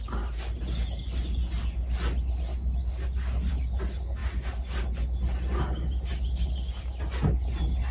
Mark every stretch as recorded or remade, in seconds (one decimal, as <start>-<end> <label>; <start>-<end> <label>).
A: 0.0-7.9 recorded